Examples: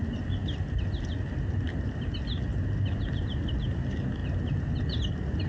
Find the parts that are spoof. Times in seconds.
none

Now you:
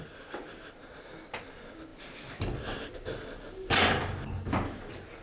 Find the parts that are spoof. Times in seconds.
none

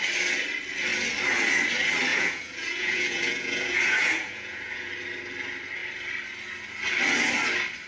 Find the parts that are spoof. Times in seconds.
2.1-4.9 (vocoder, Vocos)

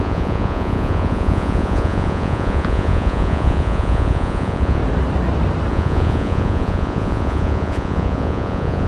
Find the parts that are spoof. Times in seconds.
0.0-4.8 (vocoder, Vocos); 5.7-8.9

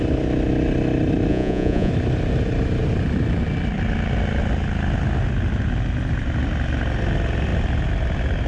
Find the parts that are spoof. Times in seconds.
1.3-1.9 (vocoder, Vocos)